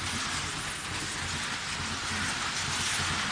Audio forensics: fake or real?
real